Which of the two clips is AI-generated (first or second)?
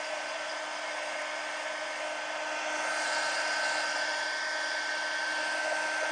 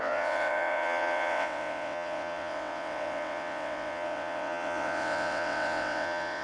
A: second